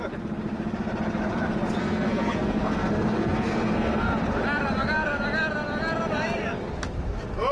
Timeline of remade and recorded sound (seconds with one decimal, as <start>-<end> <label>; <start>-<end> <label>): 0.0-1.8 recorded; 1.8-4.1 remade; 4.1-7.5 recorded